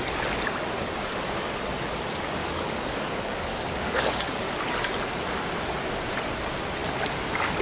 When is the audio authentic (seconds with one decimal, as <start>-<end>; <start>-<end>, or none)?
0.0-2.4; 4.6-7.6